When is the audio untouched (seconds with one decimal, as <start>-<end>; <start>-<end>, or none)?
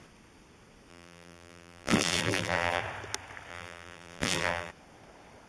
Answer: 0.0-0.9; 2.8-3.5; 4.7-5.5